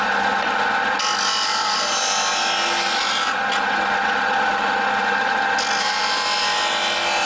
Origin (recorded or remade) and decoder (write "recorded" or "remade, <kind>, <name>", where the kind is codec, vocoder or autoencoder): recorded